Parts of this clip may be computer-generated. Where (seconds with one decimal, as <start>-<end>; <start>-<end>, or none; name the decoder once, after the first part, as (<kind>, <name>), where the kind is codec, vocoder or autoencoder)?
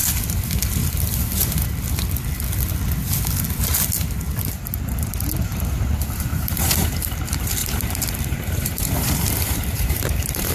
6.3-7.1 (vocoder, BigVGAN v2); 7.6-10.5